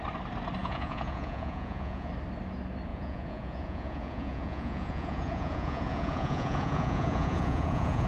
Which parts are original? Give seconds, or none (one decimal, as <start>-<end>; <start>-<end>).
0.0-0.6; 2.1-2.9